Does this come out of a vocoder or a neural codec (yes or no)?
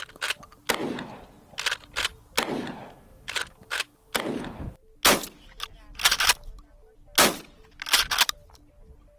no